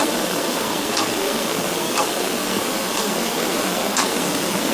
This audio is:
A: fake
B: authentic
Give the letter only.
A